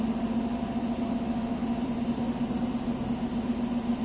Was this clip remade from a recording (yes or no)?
no